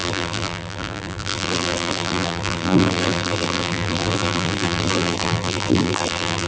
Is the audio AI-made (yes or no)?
yes